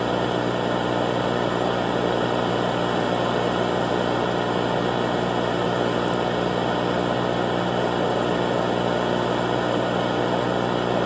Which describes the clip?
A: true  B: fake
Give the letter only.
A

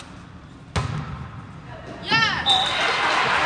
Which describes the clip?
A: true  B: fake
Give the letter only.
A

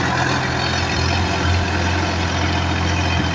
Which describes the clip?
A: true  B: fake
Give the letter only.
A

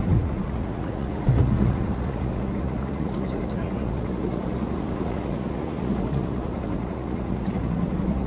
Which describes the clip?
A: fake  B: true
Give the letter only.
A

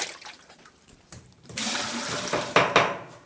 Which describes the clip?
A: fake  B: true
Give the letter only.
A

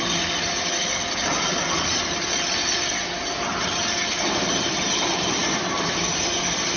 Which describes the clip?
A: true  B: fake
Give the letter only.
A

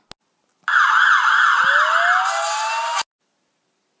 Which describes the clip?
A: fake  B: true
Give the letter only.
B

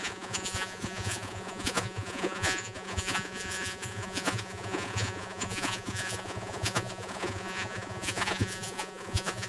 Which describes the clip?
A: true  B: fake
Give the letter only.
B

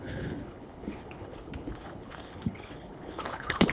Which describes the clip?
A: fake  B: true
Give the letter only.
A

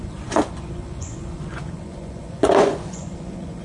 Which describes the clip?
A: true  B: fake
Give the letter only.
B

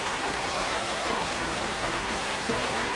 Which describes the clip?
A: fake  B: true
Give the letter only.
A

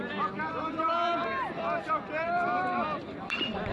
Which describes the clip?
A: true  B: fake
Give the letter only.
B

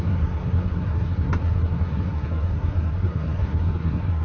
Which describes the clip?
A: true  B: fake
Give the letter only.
B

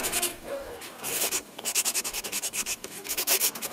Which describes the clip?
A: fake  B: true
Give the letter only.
A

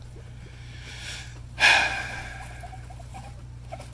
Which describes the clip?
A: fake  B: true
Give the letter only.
B